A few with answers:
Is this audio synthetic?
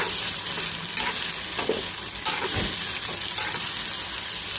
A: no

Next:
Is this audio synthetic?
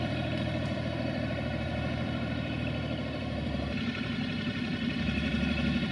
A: yes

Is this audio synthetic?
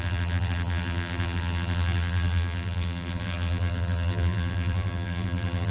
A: yes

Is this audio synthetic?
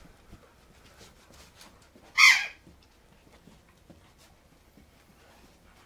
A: yes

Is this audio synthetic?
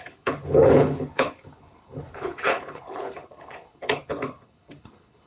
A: yes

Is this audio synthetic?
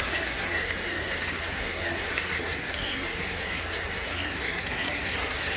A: yes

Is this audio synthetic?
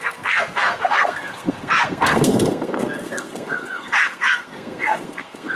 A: yes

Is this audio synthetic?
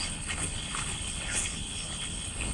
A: yes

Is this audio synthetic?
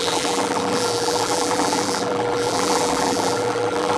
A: yes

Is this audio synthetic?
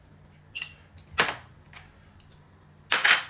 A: no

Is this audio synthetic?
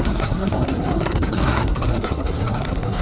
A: yes